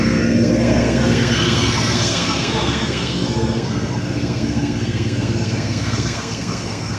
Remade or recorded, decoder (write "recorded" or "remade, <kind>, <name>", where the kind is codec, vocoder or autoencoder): remade, codec, SNAC